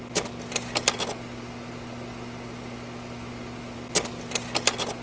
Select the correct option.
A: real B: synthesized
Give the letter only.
A